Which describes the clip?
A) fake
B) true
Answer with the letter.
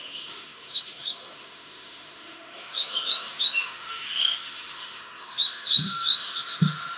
A